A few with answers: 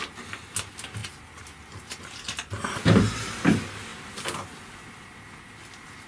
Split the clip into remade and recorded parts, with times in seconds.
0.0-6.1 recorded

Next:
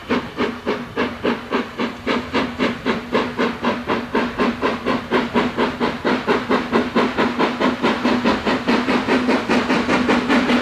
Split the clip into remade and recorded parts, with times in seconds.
0.0-10.6 recorded